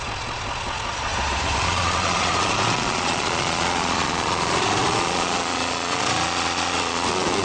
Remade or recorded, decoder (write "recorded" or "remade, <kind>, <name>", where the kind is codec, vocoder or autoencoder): remade, vocoder, Vocos